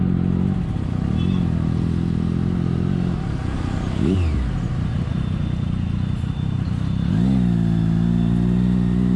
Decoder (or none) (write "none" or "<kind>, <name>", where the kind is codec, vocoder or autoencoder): none